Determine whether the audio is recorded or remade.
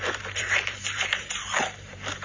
remade